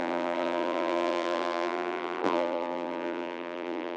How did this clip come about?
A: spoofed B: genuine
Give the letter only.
A